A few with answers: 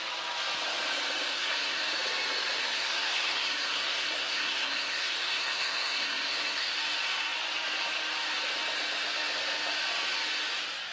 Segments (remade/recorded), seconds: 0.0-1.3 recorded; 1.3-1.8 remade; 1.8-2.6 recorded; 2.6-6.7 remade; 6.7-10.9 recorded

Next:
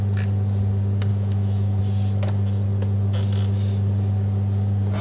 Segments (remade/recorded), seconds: 0.0-1.1 recorded; 1.1-1.8 remade; 1.8-5.0 recorded

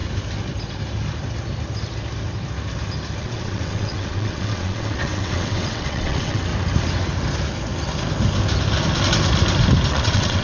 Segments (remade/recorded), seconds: 0.0-3.2 recorded; 3.2-6.5 remade; 6.5-9.9 recorded; 9.9-10.4 remade

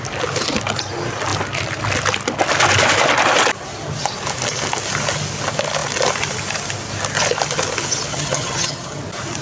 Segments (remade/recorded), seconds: 0.0-8.1 recorded; 8.1-9.0 remade; 9.0-9.4 recorded

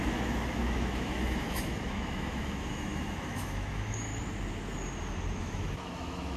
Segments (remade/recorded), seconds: 0.0-4.1 remade; 4.1-5.4 recorded; 5.4-6.4 remade

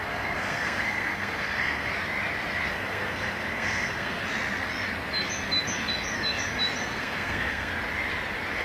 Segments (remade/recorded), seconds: 0.0-1.9 remade; 1.9-2.7 recorded; 2.7-4.2 remade; 4.2-6.8 recorded; 6.8-7.7 remade; 7.7-8.6 recorded

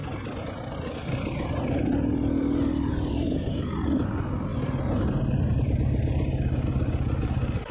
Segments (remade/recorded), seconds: 0.0-7.7 recorded